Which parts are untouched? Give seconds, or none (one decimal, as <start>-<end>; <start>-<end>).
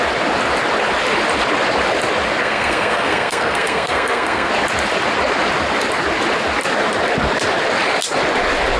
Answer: 0.0-2.4; 4.5-8.8